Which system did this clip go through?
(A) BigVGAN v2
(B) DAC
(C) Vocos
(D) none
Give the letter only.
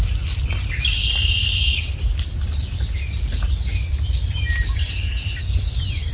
D